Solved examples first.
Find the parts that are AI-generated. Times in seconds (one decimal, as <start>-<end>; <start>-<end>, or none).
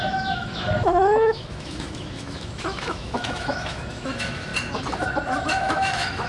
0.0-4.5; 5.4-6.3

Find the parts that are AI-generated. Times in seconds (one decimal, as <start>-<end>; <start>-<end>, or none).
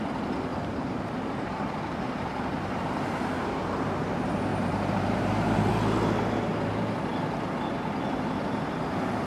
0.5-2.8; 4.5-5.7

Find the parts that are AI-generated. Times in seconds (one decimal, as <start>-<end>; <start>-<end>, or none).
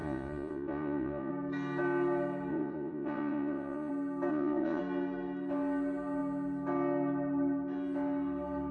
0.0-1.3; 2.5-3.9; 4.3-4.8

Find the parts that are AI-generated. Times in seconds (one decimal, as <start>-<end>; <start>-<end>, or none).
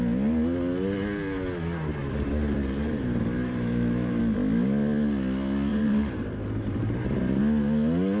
2.0-4.2; 5.7-7.4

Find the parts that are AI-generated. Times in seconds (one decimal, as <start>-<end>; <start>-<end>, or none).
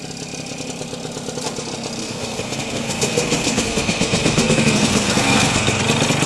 2.0-5.8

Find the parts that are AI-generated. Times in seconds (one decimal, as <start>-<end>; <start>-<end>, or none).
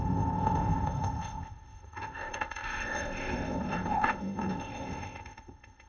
0.0-5.9